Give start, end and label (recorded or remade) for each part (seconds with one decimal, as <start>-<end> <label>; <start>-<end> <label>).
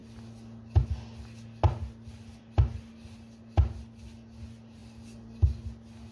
0.0-6.1 recorded